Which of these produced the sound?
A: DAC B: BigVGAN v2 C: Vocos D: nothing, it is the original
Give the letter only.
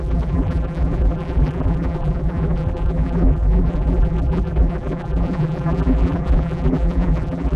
B